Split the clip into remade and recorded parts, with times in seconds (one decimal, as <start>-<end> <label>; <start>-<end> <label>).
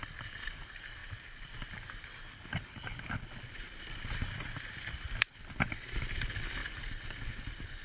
0.0-7.8 recorded